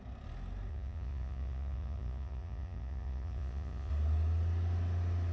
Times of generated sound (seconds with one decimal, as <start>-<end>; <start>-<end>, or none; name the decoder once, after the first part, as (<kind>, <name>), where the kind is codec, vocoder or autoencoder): 0.7-3.9 (vocoder, Vocos)